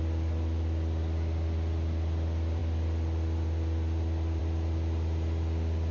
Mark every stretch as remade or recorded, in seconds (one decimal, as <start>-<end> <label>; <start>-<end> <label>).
0.0-5.9 recorded